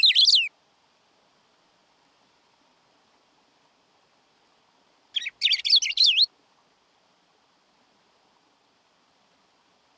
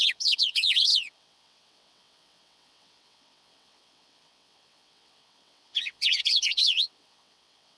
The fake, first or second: second